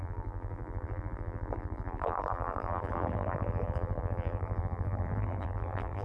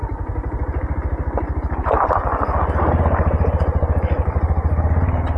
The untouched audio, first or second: second